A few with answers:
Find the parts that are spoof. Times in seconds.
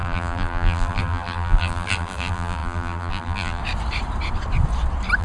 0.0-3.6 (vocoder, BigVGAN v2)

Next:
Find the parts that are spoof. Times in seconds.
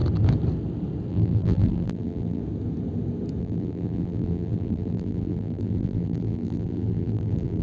1.1-2.4 (vocoder, BigVGAN v2); 3.4-7.6